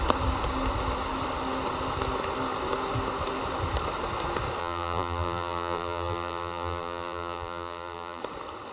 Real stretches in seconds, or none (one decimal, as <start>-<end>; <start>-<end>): 0.0-4.6; 8.2-8.7